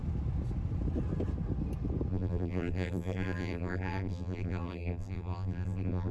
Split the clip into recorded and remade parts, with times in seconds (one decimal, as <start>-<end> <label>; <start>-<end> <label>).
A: 0.0-2.1 recorded; 2.1-6.1 remade